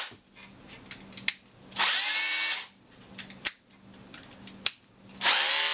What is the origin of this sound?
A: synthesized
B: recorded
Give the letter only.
B